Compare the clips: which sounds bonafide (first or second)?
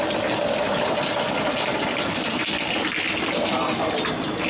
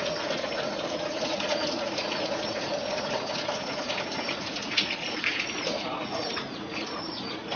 first